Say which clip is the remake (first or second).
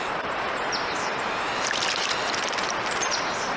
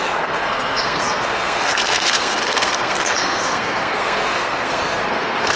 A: second